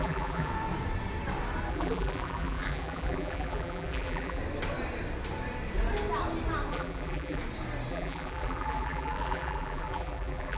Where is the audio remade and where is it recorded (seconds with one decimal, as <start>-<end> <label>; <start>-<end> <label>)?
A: 0.0-0.5 remade; 0.5-1.7 recorded; 1.7-4.4 remade; 4.4-6.7 recorded; 6.7-7.4 remade; 7.4-7.9 recorded; 7.9-10.6 remade